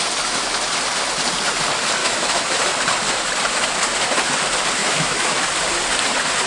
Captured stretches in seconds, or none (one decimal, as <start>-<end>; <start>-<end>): 0.0-2.0; 2.6-4.8; 5.4-6.5